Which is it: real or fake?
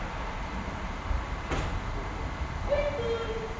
real